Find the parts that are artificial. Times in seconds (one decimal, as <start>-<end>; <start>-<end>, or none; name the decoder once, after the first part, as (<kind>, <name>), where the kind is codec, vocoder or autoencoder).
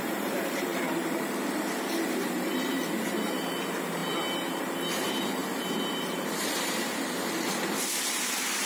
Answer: 0.0-8.7 (vocoder, BigVGAN v2)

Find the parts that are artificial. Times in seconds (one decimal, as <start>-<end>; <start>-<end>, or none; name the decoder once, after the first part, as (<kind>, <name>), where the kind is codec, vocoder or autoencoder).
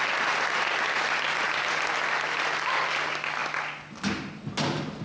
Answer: none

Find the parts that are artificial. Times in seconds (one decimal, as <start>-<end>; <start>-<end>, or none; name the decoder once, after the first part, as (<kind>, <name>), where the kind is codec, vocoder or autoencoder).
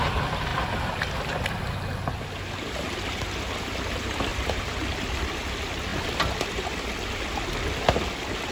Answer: 0.5-1.6 (vocoder, BigVGAN v2); 4.3-5.1; 5.9-6.9